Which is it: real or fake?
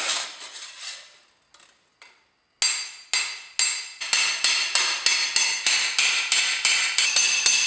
real